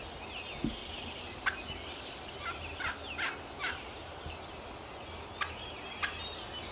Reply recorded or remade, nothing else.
recorded